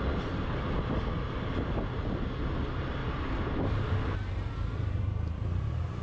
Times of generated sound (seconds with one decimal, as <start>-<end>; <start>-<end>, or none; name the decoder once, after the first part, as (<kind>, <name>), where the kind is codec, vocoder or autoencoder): none